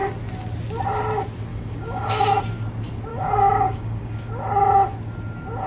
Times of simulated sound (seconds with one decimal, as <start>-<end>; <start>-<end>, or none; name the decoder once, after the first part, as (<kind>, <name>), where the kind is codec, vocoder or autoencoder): 1.5-2.4 (codec, DAC); 3.1-4.3